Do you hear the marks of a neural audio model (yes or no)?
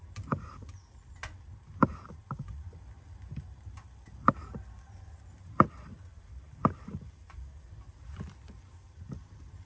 no